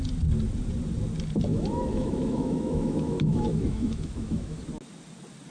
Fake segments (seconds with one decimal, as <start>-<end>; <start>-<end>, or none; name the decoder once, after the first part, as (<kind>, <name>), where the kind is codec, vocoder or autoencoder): 1.5-4.6 (autoencoder, DAC-VAE)